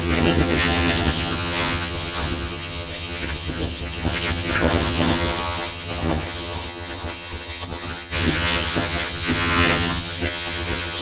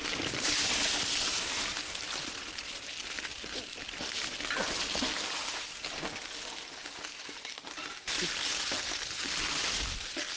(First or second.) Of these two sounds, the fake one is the first